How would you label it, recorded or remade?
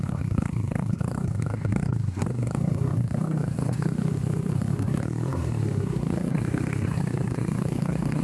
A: remade